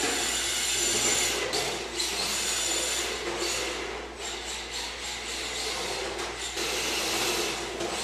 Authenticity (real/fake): real